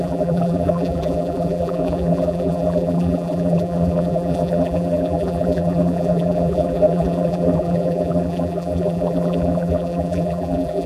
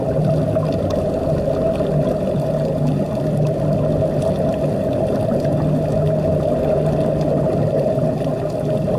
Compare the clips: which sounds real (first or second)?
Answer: second